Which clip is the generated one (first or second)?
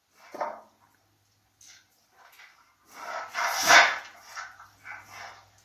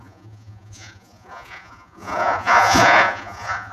second